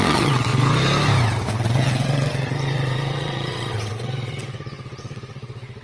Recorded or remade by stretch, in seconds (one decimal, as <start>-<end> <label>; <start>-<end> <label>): 0.0-0.5 remade; 0.5-1.5 recorded; 1.5-5.8 remade